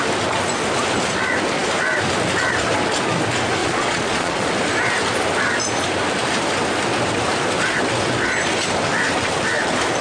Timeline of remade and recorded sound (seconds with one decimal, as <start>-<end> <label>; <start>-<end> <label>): 0.0-3.6 recorded; 3.6-4.5 remade; 4.5-10.0 recorded